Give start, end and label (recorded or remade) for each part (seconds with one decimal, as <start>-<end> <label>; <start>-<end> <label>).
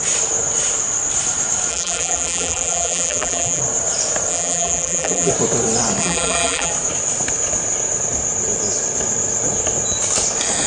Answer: 0.0-1.7 recorded; 1.7-3.6 remade; 3.6-4.3 recorded; 4.3-5.3 remade; 5.3-6.0 recorded; 6.0-6.7 remade; 6.7-10.7 recorded